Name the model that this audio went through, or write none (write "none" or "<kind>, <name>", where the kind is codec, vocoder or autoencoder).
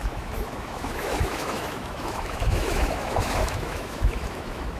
autoencoder, DAC-VAE